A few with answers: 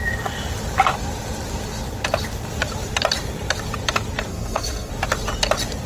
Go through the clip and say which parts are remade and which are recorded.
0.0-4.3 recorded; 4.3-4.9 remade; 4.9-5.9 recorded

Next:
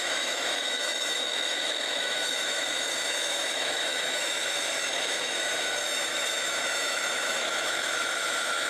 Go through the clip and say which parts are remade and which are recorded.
0.0-8.7 remade